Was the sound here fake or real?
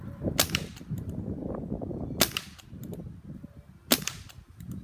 real